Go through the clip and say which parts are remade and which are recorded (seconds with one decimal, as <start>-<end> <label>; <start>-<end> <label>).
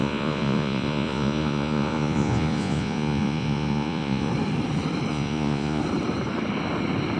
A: 0.0-4.3 remade; 4.3-5.1 recorded; 5.1-5.8 remade; 5.8-7.2 recorded